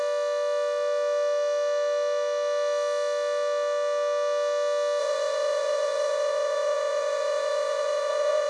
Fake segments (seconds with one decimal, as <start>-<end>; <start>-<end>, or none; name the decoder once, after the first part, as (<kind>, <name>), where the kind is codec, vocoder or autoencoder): 5.0-8.5 (vocoder, Vocos)